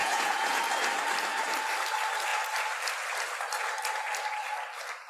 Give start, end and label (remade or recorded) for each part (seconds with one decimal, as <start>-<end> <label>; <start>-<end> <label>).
0.0-0.6 remade; 0.6-5.1 recorded